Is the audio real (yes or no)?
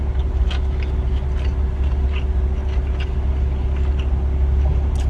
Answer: yes